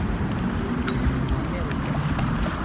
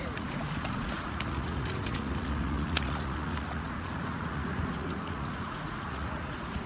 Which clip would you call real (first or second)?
first